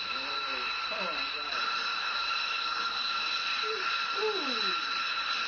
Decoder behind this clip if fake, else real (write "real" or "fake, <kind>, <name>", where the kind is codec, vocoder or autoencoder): fake, vocoder, BigVGAN v2